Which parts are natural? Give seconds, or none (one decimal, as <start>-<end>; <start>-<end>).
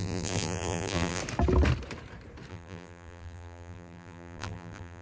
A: 1.2-2.5